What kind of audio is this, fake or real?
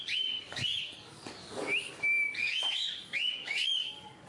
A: fake